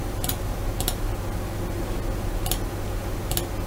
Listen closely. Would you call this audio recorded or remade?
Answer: recorded